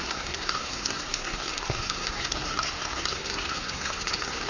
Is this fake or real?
fake